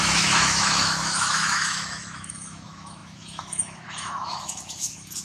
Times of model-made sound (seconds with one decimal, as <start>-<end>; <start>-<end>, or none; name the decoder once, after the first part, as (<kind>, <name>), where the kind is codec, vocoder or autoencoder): 0.0-5.2 (autoencoder, DAC-VAE)